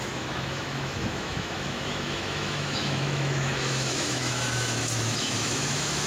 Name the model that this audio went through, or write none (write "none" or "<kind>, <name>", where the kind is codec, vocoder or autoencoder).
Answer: autoencoder, DAC-VAE